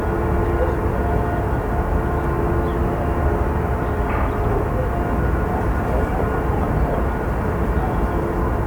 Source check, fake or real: real